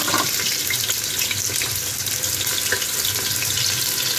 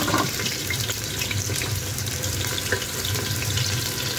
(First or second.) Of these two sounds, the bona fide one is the first